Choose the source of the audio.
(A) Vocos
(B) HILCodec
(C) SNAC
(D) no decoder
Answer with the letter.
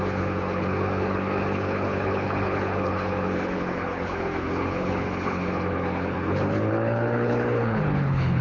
B